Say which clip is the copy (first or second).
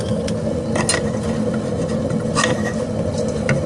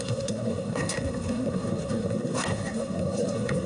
second